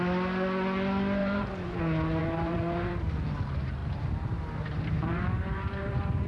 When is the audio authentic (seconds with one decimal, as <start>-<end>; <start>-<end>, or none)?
0.0-1.2; 1.8-2.2; 2.9-3.8